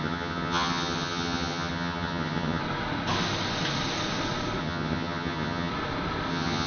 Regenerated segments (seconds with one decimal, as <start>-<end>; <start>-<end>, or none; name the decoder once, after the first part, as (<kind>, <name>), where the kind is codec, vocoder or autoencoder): 0.0-2.6 (vocoder, HiFi-GAN); 4.6-5.7; 6.3-6.7